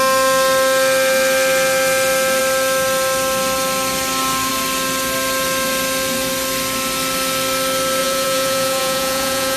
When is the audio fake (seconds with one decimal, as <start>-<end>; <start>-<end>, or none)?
8.0-9.6